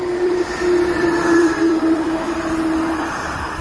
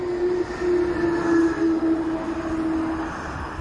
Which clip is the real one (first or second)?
second